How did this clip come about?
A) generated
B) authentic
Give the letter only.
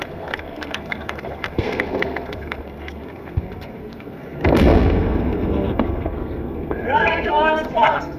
A